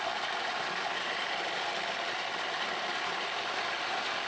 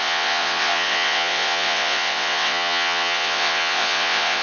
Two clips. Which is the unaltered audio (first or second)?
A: first